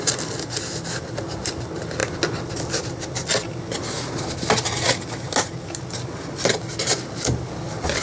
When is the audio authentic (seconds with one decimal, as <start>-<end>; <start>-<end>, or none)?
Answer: 0.0-8.0